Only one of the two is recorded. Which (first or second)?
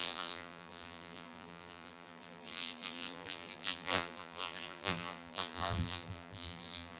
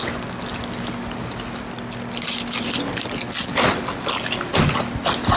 second